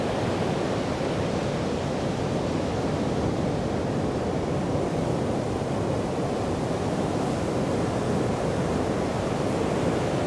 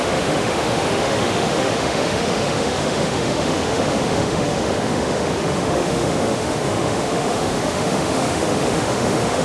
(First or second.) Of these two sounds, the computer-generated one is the second